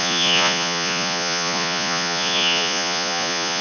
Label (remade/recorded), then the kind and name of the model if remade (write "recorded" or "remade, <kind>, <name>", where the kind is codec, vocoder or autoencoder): remade, vocoder, Vocos